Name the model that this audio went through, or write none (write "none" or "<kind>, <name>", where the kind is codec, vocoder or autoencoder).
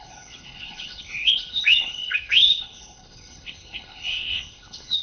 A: codec, HILCodec